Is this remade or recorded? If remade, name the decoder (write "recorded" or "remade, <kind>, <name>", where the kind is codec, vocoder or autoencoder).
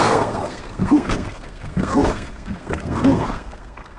remade, codec, SNAC